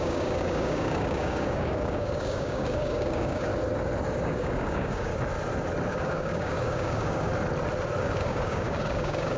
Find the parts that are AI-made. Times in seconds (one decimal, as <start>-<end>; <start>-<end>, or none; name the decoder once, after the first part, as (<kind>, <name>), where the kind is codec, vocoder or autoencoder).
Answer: 0.0-3.5 (codec, DAC); 4.2-5.1; 5.9-7.3; 8.0-9.4